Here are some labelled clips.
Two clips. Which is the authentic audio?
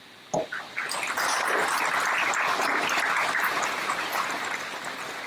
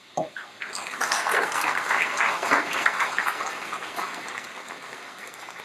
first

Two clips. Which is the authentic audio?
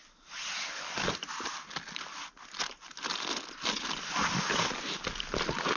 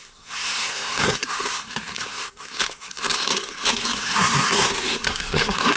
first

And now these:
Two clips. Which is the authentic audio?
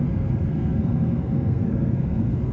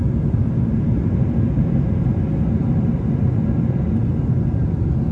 second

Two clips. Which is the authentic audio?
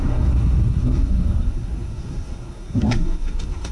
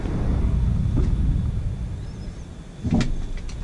second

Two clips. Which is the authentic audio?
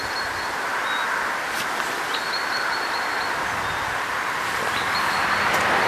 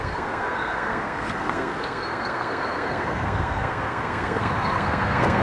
first